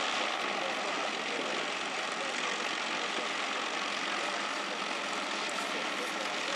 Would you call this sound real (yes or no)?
yes